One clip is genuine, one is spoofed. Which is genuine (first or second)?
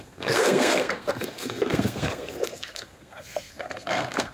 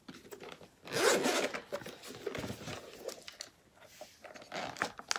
second